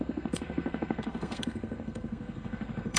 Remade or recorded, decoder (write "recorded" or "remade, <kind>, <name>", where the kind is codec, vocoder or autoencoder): remade, codec, SNAC